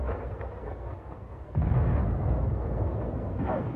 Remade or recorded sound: remade